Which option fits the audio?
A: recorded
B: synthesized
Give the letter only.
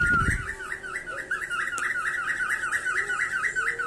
A